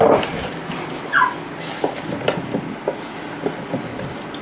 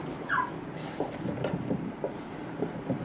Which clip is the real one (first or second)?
first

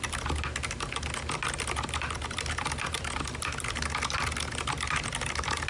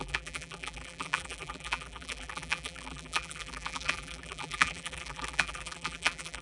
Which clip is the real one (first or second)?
first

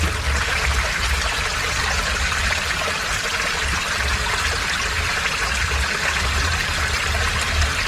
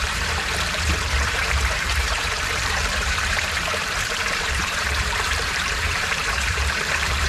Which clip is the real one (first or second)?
first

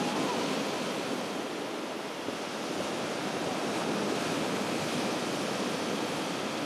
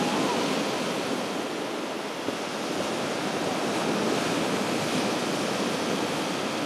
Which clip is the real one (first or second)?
second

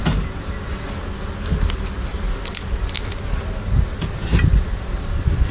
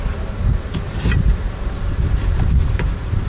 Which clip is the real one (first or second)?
first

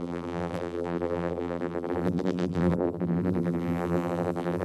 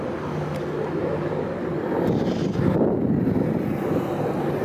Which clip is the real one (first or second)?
second